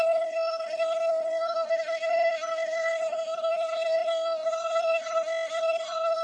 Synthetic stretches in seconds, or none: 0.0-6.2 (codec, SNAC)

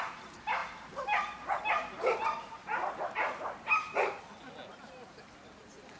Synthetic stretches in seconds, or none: 0.6-4.2 (vocoder, BigVGAN v2); 4.7-5.6

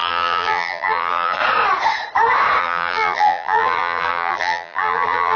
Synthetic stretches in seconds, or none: 0.0-1.4 (vocoder, BigVGAN v2); 2.6-5.4

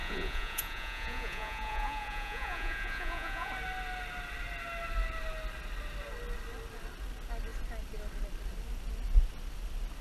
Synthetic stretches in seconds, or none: 0.0-3.5 (vocoder, Vocos)